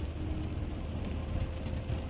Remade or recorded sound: recorded